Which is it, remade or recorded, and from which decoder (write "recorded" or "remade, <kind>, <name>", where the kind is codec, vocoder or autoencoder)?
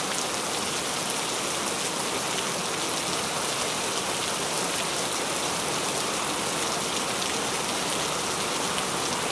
recorded